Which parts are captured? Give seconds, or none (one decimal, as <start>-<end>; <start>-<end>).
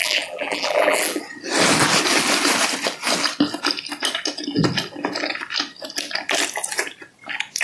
1.2-7.6